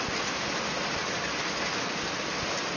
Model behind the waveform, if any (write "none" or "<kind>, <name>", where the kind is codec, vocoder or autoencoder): none